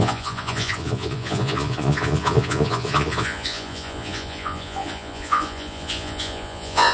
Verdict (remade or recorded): remade